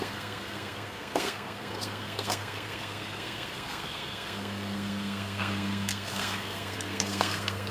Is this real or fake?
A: fake